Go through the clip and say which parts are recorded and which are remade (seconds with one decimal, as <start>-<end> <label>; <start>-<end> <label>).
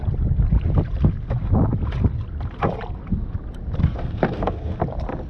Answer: 0.0-3.8 recorded; 3.8-4.8 remade; 4.8-5.3 recorded